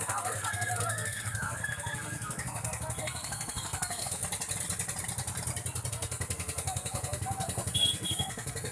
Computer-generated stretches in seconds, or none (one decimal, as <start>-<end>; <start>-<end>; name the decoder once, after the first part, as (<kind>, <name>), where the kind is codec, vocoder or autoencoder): 0.0-4.2 (codec, SNAC); 5.9-8.7